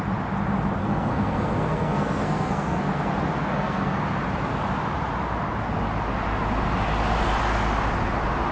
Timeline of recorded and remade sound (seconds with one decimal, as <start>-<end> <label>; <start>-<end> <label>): 0.0-0.8 recorded; 0.8-3.1 remade; 3.1-3.5 recorded; 3.5-4.0 remade; 4.0-8.5 recorded